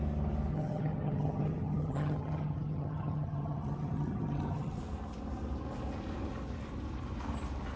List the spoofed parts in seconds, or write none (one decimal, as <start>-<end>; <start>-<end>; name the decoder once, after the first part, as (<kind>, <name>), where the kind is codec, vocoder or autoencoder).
0.5-4.8 (vocoder, HiFi-GAN)